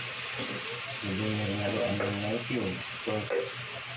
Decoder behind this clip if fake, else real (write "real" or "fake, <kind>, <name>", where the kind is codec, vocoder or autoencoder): real